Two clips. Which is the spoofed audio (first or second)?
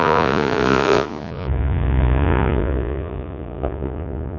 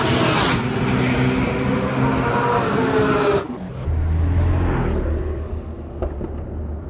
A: first